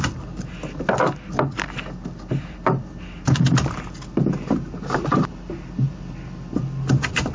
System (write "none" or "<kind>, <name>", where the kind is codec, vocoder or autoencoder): none